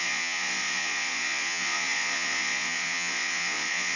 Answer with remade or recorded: remade